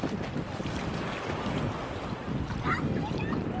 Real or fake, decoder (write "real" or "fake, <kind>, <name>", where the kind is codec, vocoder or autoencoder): real